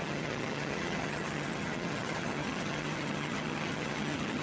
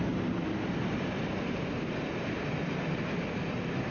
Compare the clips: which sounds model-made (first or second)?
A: first